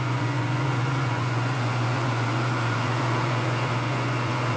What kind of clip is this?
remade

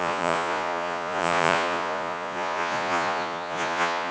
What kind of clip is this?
remade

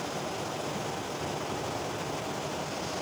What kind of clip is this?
recorded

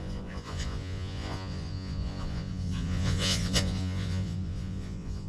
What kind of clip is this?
remade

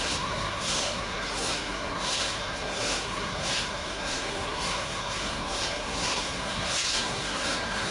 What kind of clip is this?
remade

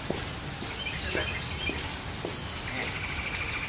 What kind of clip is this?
recorded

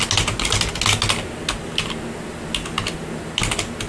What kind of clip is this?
recorded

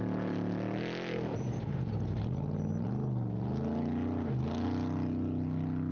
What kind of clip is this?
recorded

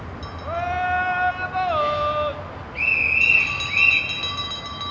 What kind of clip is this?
recorded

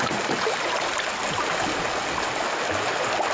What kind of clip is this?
recorded